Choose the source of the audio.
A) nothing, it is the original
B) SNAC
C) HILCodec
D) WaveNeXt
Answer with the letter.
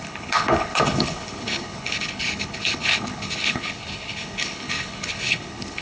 C